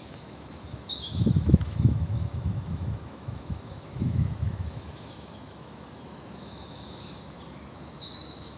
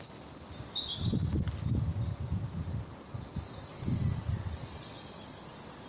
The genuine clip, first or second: second